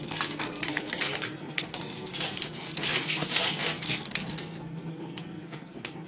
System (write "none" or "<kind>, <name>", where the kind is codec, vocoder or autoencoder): codec, SNAC